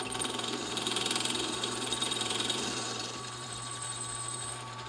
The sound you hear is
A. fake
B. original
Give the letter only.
A